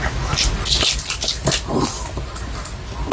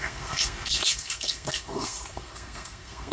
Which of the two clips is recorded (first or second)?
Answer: first